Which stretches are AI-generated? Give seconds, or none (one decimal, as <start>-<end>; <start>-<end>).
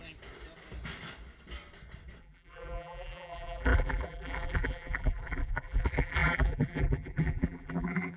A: 2.2-8.2